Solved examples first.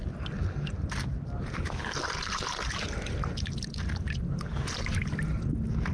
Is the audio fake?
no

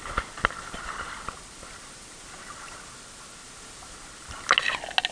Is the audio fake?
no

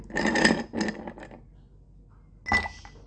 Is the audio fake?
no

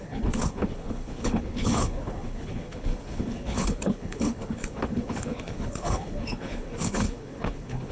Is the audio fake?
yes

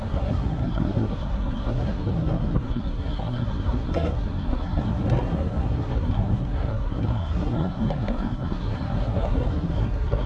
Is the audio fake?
yes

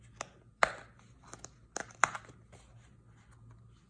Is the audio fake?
no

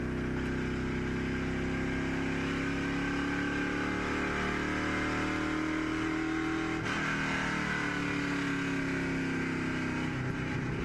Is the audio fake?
no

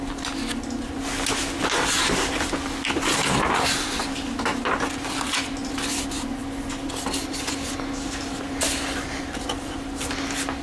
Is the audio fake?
no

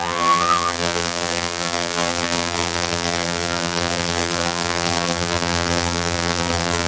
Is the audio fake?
yes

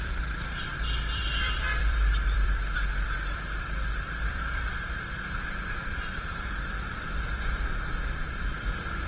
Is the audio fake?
yes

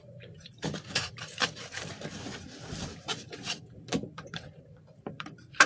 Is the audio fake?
yes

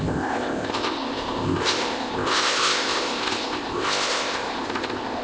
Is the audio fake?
yes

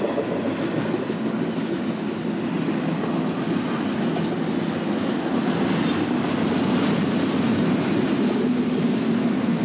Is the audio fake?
no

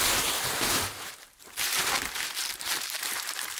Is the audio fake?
yes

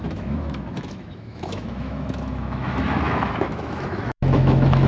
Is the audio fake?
yes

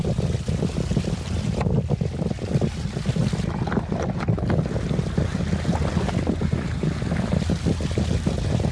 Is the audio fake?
no